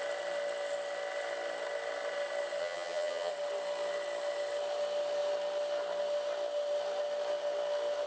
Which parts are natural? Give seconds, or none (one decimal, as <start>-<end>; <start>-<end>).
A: 0.0-2.6; 3.3-8.1